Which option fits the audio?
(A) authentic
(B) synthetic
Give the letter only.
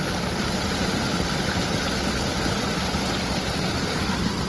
A